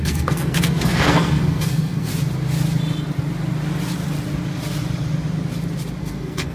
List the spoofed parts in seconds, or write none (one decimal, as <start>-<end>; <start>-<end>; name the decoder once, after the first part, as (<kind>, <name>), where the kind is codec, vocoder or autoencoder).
0.0-2.1 (codec, SNAC); 6.0-6.5

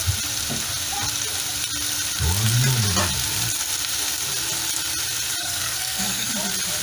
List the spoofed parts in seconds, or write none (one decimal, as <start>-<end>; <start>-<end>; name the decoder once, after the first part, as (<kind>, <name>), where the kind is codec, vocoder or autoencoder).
5.4-6.3 (codec, SNAC)

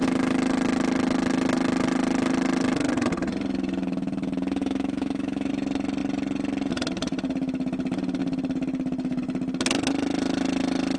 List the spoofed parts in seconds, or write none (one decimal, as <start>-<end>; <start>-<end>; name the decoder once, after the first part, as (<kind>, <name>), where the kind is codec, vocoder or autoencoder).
4.6-5.5 (autoencoder, DAC-VAE)

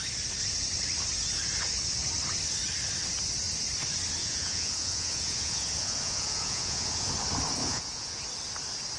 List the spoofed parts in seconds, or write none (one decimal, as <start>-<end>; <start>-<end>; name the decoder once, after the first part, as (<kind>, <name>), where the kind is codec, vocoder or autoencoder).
4.2-7.1 (vocoder, Vocos); 7.6-8.2

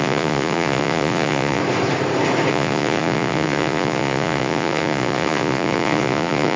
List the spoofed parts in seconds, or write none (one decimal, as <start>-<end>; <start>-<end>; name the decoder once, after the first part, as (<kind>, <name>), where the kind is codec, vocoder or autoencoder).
0.0-1.6 (vocoder, Vocos); 2.5-6.6

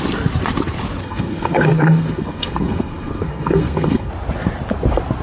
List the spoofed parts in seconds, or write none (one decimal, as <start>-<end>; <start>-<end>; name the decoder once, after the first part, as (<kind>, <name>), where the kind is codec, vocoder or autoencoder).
1.0-4.1 (codec, SNAC)

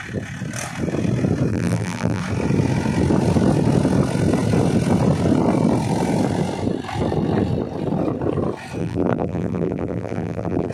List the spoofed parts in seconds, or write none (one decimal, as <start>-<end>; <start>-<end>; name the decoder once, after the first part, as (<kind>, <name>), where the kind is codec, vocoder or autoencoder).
1.5-2.2 (vocoder, BigVGAN v2); 8.8-10.7